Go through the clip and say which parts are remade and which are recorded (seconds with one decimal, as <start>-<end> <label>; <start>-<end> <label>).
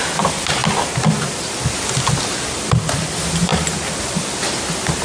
0.0-5.0 recorded